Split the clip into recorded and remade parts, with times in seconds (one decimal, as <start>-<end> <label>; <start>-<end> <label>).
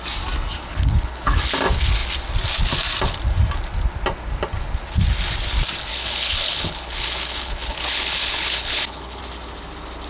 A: 0.0-0.6 recorded; 0.6-1.4 remade; 1.4-5.9 recorded; 5.9-9.2 remade; 9.2-10.1 recorded